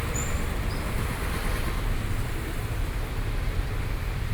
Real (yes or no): yes